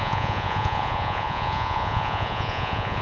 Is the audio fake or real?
fake